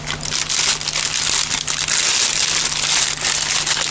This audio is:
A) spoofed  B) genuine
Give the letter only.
B